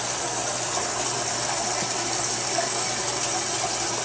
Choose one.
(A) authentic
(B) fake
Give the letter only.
A